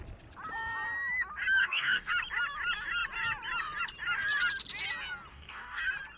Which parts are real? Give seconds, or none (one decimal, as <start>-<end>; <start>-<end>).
0.0-1.6; 2.1-5.3; 5.8-6.2

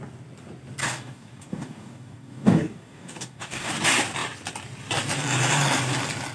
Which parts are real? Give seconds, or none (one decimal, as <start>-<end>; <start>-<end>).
0.0-0.8; 3.7-6.3

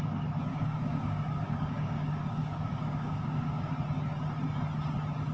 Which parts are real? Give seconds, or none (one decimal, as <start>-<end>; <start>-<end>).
0.0-0.5; 3.7-5.3

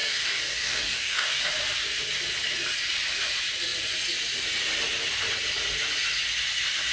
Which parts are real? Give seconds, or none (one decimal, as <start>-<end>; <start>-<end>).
1.4-6.9